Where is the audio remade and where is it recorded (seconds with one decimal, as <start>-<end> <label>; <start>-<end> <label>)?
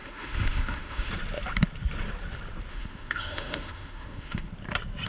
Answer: 0.0-1.1 remade; 1.1-2.7 recorded; 2.7-4.5 remade; 4.5-5.1 recorded